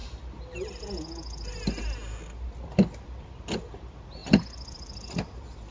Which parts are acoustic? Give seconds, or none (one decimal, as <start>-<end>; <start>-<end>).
0.0-5.7